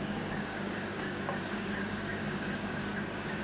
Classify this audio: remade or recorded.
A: remade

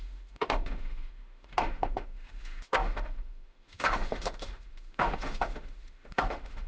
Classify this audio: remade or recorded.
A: remade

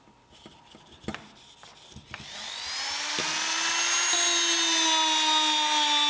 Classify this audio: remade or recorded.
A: recorded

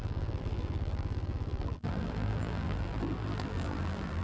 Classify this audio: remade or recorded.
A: remade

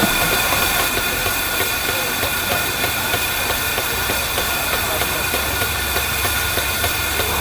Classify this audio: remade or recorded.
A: remade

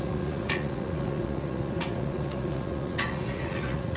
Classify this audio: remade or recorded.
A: remade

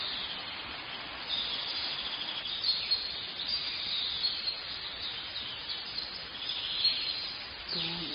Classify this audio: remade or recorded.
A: recorded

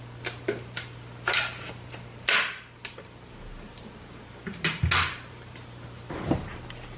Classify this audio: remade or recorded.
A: recorded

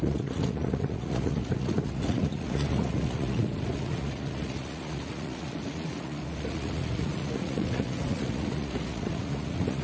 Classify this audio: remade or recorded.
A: remade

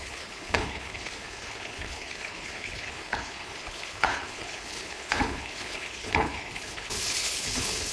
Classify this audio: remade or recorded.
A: remade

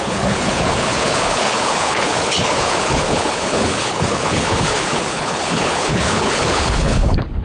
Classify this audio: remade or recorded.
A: remade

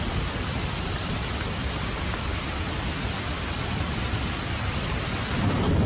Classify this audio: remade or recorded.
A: recorded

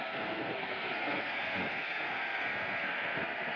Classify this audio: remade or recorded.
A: remade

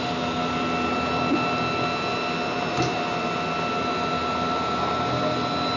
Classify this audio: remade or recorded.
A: recorded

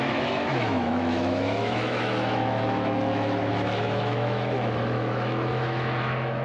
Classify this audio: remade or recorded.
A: remade